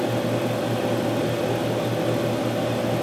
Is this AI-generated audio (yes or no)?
no